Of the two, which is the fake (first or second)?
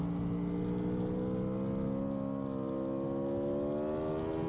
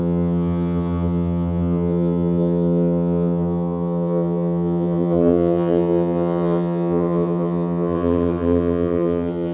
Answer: second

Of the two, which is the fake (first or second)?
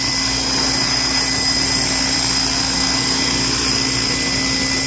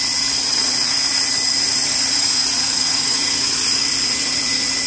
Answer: second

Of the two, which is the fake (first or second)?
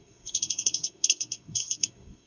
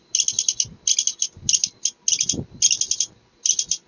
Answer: first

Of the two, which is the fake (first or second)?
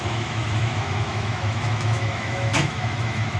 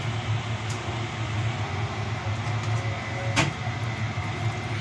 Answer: first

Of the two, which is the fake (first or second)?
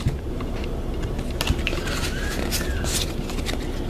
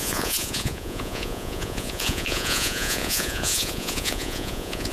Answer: second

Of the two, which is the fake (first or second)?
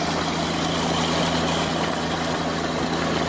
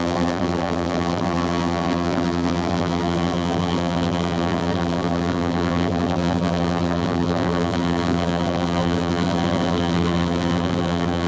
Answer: second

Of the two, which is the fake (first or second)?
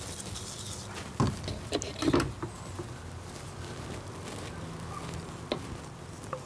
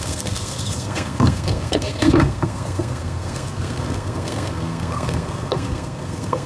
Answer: second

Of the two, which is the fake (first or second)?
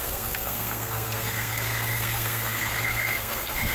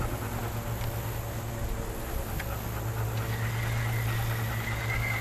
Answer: first